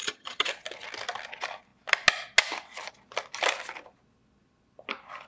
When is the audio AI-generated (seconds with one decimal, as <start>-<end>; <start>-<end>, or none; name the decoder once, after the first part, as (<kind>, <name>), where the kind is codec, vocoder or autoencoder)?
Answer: 0.0-0.5 (vocoder, HiFi-GAN)

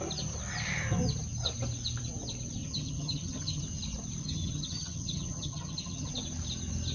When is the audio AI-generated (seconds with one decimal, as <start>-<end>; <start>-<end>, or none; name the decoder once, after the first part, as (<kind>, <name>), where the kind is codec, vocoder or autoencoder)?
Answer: 2.6-3.6 (vocoder, HiFi-GAN); 4.2-6.1

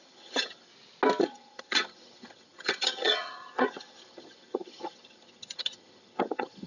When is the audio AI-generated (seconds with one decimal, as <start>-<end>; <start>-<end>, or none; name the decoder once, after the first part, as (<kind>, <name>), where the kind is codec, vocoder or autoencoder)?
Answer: 0.0-0.7 (vocoder, HiFi-GAN); 1.2-6.7

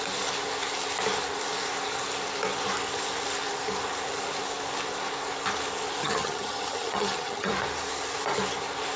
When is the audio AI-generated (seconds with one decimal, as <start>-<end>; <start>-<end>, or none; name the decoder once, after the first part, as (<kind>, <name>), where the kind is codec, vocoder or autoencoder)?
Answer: 6.0-7.5 (vocoder, HiFi-GAN)

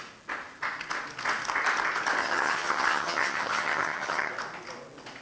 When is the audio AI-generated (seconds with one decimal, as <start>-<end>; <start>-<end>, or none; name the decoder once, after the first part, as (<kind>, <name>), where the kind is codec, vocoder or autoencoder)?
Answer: 2.2-4.3 (vocoder, HiFi-GAN)